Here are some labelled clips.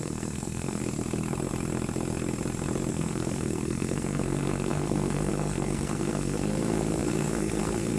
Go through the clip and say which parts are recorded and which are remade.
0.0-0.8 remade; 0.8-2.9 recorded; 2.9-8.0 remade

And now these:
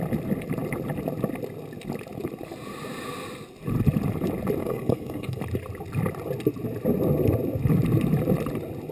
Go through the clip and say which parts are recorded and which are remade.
0.0-4.6 recorded; 4.6-5.4 remade; 5.4-8.9 recorded

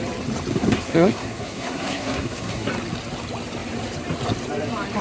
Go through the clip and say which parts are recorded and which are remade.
0.0-0.5 recorded; 0.5-2.7 remade; 2.7-5.0 recorded

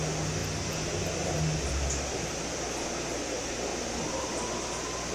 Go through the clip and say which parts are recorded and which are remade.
0.0-5.1 recorded

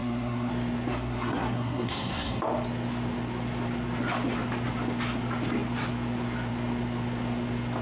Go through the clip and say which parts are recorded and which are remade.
0.0-0.5 remade; 0.5-0.9 recorded; 0.9-2.4 remade; 2.4-7.8 recorded

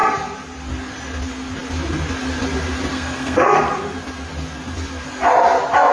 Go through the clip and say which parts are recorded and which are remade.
0.0-2.9 recorded; 2.9-3.7 remade; 3.7-5.9 recorded

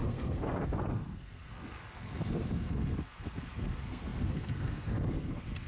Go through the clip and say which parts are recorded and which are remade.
0.0-5.7 remade